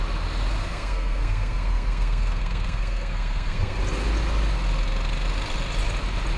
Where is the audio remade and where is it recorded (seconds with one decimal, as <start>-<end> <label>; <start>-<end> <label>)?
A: 0.0-0.6 recorded; 0.6-3.8 remade; 3.8-6.4 recorded